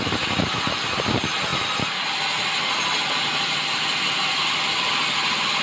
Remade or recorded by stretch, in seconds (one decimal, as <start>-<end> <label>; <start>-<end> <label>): 0.0-5.6 recorded